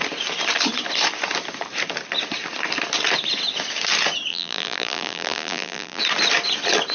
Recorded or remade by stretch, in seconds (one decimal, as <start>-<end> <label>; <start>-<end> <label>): 0.0-4.3 recorded; 4.3-6.0 remade; 6.0-6.9 recorded